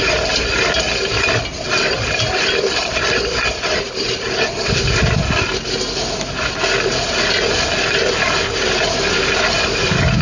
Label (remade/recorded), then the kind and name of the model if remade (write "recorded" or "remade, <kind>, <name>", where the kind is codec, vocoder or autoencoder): recorded